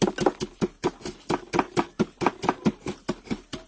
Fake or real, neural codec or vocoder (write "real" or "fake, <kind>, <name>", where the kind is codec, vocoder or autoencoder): real